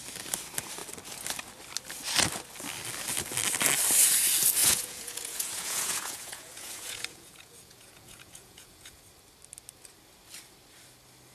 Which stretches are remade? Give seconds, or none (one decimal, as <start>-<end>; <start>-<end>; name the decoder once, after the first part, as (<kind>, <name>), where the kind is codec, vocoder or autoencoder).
4.6-9.0 (vocoder, Vocos)